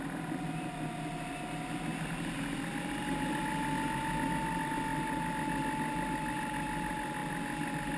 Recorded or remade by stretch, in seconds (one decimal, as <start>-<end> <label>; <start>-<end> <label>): 0.0-8.0 recorded